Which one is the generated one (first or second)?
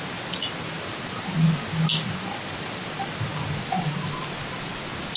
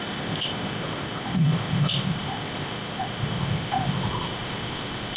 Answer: second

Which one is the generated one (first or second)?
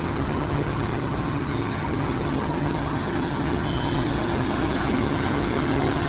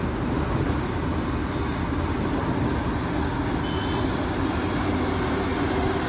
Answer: first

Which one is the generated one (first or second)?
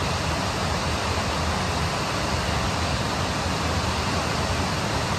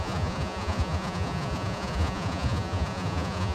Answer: second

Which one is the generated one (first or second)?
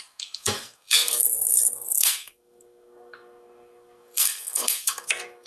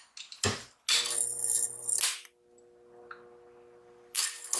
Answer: first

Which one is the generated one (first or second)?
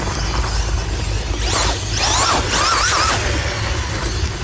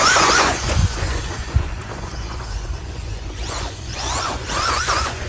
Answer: second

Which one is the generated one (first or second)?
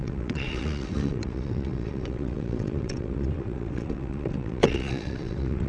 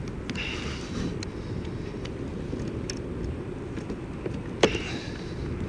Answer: first